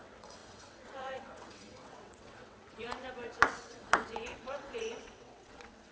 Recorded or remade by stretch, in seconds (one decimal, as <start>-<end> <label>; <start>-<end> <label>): 0.0-5.9 remade